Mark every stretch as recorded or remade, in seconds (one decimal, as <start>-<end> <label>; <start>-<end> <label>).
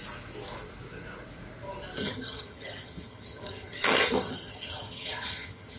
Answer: 0.0-2.0 recorded; 2.0-5.8 remade